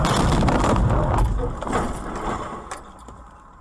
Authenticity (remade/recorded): recorded